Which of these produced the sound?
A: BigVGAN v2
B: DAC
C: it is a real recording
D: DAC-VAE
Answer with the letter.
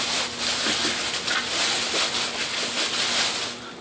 C